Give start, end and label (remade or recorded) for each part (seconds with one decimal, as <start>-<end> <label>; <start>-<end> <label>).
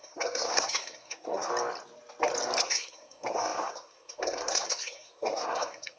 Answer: 0.0-1.5 remade; 1.5-2.6 recorded; 2.6-6.0 remade